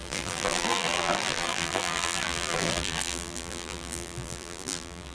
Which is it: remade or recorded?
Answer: remade